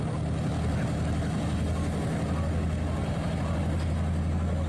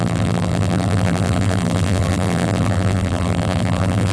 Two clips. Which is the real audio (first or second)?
first